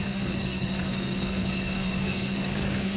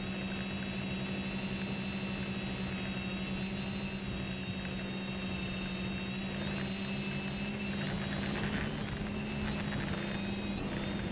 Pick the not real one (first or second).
first